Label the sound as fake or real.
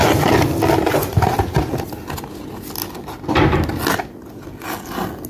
real